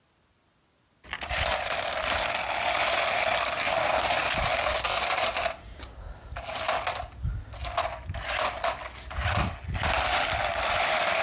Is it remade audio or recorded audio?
recorded